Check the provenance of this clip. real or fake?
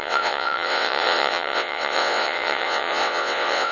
fake